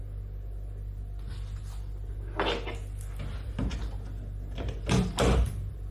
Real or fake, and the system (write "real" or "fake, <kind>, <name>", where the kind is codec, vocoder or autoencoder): real